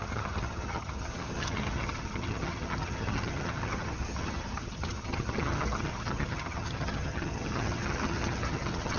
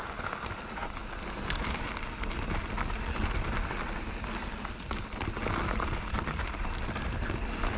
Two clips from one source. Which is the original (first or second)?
second